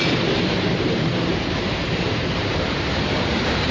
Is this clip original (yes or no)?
no